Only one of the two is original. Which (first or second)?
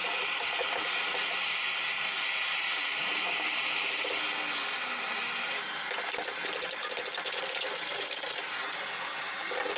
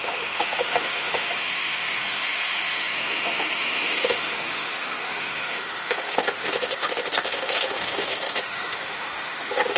first